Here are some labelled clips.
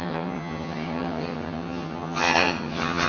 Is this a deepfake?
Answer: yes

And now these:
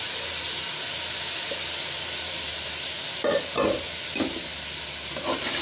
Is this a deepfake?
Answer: no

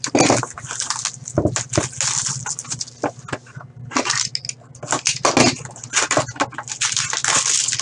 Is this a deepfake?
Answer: no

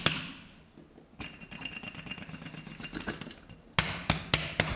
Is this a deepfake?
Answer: no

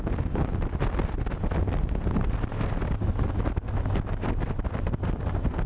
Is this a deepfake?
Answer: no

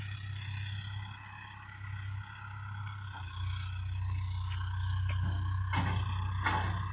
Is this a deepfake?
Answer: no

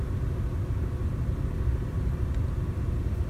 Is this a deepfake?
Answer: no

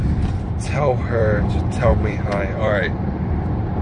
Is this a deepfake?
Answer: yes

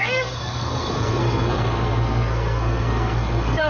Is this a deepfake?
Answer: yes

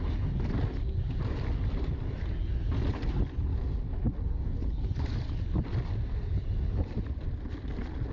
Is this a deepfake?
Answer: no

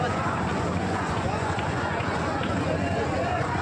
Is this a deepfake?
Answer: yes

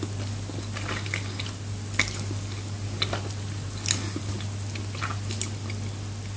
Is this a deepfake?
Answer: no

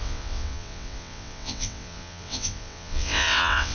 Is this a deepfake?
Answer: yes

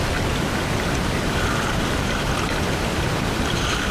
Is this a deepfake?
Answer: yes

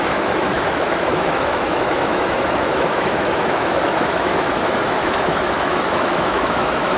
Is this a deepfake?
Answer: yes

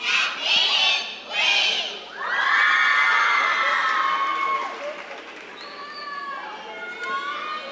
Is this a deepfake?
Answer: no